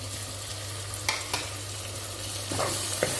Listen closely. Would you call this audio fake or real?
real